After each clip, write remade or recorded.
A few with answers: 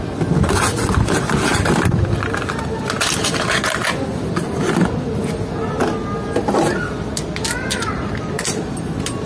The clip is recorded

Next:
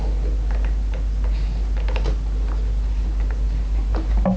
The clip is recorded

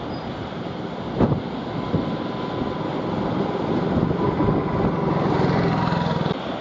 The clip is recorded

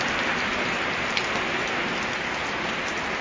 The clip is recorded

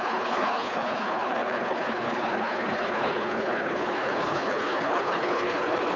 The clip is remade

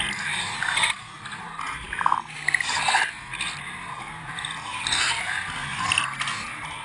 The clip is recorded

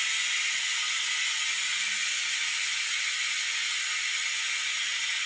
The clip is recorded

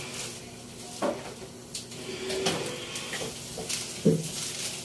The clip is recorded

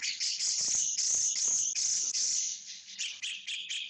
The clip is remade